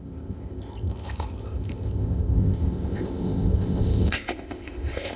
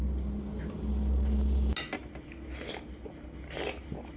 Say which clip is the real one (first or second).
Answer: second